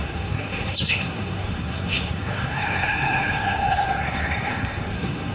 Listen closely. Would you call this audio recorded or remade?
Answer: remade